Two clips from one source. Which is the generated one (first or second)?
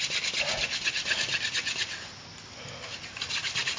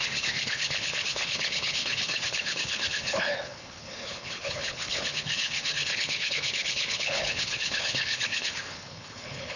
second